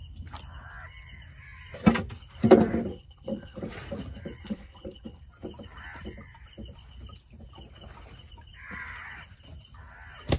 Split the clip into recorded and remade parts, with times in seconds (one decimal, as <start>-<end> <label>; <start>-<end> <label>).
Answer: 0.0-2.9 recorded; 2.9-3.6 remade; 3.6-4.4 recorded; 4.4-5.2 remade; 5.2-10.4 recorded